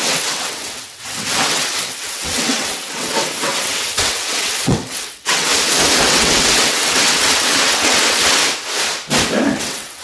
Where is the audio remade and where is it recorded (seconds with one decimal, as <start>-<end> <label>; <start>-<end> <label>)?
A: 0.0-5.5 remade; 5.5-6.0 recorded; 6.0-8.4 remade; 8.4-9.6 recorded; 9.6-10.0 remade